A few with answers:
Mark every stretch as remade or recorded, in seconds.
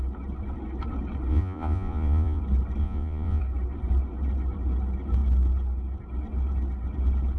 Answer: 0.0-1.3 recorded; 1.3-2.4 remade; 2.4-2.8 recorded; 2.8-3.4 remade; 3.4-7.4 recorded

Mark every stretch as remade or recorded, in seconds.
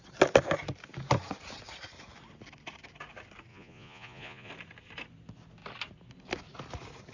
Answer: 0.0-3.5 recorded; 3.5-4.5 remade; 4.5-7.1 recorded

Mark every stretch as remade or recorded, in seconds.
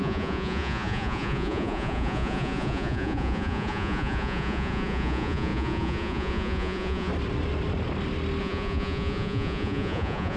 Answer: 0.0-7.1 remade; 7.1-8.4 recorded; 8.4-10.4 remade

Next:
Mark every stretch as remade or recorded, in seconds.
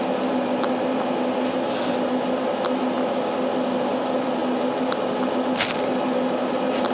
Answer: 0.0-6.9 recorded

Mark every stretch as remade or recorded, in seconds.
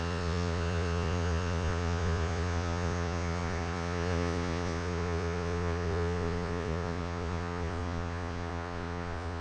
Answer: 0.0-9.4 remade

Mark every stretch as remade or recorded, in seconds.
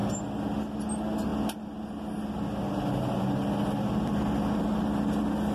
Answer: 0.0-5.5 recorded